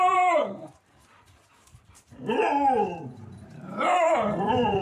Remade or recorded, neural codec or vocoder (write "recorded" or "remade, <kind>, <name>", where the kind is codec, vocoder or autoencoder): remade, vocoder, BigVGAN v2